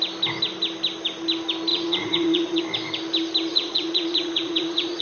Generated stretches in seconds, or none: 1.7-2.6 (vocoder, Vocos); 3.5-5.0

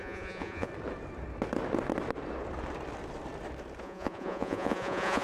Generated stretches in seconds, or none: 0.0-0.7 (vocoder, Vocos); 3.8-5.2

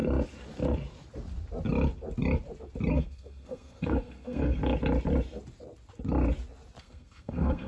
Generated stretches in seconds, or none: 2.9-4.6 (codec, SNAC); 6.8-7.7